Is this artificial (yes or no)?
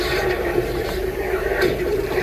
yes